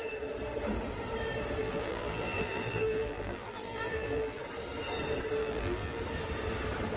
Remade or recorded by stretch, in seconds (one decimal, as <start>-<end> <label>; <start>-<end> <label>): 0.0-1.6 recorded; 1.6-4.4 remade; 4.4-5.4 recorded; 5.4-6.0 remade; 6.0-7.0 recorded